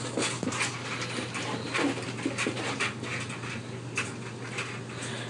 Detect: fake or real real